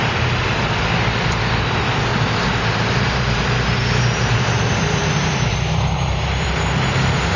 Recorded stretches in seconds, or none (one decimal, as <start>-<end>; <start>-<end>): 0.0-2.1; 6.5-7.4